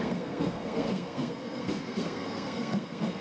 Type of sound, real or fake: fake